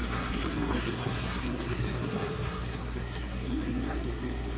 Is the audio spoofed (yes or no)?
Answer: yes